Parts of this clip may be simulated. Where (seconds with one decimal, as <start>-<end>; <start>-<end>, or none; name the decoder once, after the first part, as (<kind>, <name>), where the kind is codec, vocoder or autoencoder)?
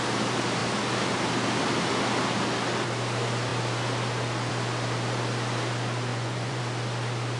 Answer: 6.1-6.6 (vocoder, Vocos)